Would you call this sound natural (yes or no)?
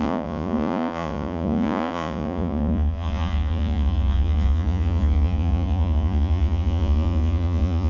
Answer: no